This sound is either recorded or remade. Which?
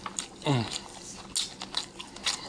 recorded